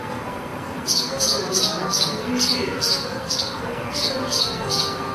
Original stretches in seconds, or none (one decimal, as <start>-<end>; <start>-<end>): none